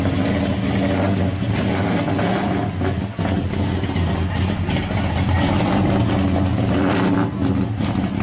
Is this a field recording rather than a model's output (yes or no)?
yes